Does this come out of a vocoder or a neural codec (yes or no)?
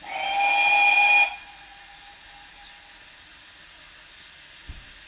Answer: no